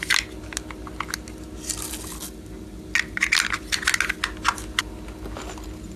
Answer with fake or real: real